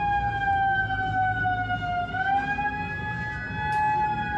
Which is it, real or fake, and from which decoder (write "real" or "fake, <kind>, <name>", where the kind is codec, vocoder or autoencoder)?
real